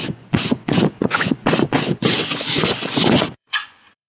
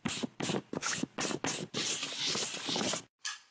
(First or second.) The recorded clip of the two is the second